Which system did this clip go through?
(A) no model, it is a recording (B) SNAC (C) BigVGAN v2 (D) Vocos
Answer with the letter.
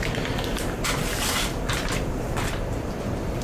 C